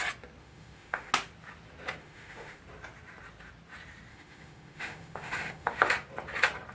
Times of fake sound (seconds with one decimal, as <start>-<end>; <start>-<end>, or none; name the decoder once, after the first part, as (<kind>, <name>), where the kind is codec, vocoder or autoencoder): 0.4-1.1 (autoencoder, DAC-VAE); 2.0-2.6; 4.1-5.8